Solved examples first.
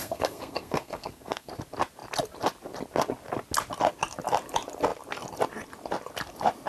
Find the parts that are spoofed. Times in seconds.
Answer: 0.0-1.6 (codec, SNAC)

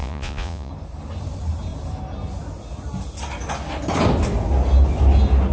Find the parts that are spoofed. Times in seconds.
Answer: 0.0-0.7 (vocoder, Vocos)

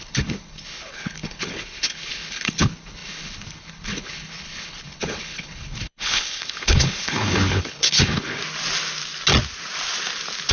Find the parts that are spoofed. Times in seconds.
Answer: 0.0-8.4 (codec, HILCodec)

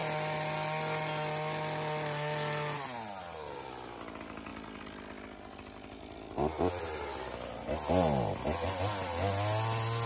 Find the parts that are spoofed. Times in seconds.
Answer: none

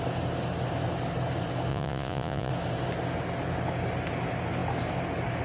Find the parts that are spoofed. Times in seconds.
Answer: 1.7-2.5 (vocoder, Vocos)

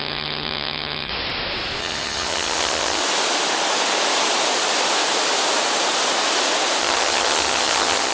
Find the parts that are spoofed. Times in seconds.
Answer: 0.0-1.1 (vocoder, HiFi-GAN); 1.8-3.0; 6.8-8.1

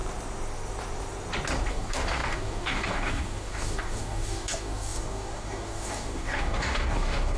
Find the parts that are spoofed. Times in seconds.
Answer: 1.7-7.4 (codec, DAC)